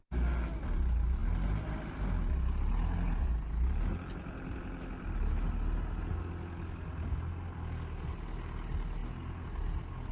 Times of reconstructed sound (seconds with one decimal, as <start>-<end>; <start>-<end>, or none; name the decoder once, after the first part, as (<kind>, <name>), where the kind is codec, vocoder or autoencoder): none